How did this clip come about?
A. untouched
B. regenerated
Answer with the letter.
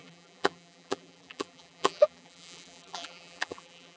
B